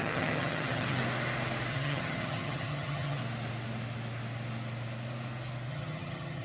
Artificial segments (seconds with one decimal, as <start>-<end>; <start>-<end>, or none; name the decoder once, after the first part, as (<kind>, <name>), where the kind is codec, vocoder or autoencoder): 0.0-1.0 (vocoder, HiFi-GAN); 1.7-3.2; 5.7-6.4